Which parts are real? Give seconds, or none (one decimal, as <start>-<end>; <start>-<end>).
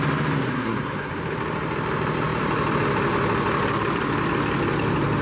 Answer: 0.0-0.5; 1.1-5.2